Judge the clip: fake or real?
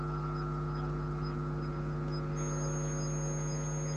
real